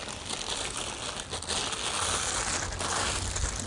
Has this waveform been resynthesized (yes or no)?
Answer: no